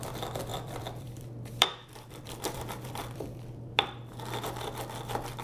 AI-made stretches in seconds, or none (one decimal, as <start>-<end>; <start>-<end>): 0.5-3.7